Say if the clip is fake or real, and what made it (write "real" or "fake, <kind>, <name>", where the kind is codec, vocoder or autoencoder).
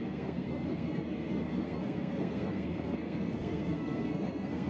fake, codec, SNAC